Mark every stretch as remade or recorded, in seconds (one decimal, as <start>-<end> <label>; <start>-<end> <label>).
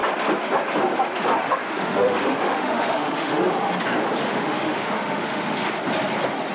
0.0-1.4 recorded; 1.4-3.4 remade; 3.4-4.2 recorded; 4.2-5.8 remade; 5.8-6.5 recorded